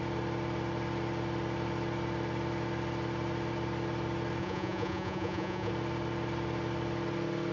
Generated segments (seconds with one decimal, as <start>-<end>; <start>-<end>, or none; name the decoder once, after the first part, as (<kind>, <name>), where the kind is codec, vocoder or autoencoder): 4.4-5.7 (vocoder, Vocos)